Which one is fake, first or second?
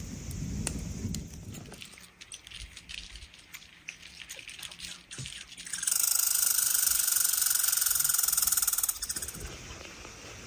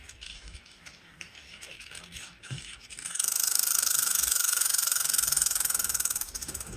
second